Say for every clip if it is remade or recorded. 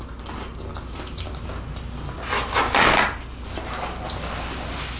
recorded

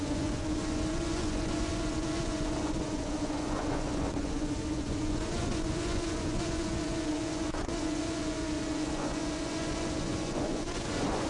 remade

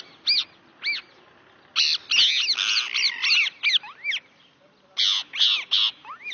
recorded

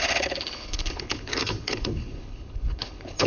remade